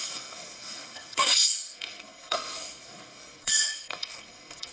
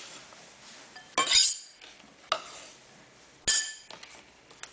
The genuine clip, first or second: second